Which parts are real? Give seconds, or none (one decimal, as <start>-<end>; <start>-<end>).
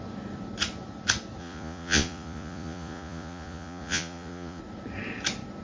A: 0.0-1.4; 4.6-5.6